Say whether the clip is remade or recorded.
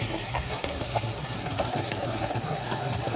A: remade